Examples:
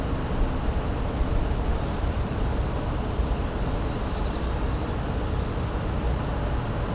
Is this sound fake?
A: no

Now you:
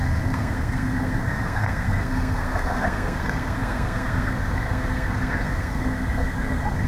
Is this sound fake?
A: yes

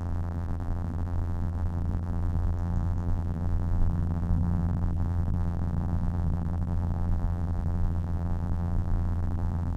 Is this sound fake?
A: yes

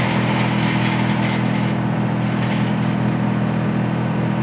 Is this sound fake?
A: no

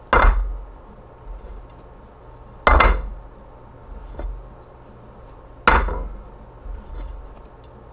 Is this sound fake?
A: no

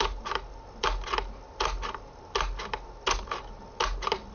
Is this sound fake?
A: no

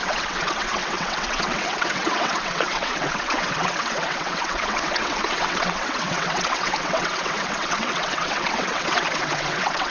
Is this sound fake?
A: yes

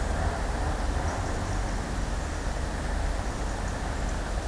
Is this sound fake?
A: no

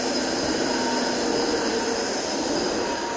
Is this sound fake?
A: no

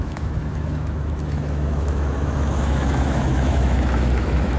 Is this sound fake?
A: yes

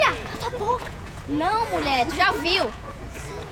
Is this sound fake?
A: yes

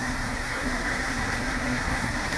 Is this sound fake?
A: yes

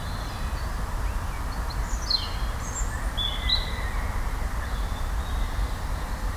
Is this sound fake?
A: no